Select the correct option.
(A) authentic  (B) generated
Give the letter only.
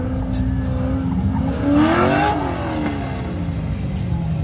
A